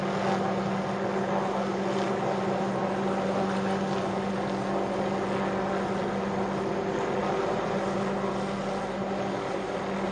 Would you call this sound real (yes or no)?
yes